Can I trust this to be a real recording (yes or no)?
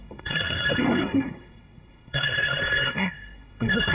no